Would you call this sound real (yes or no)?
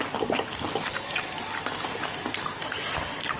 no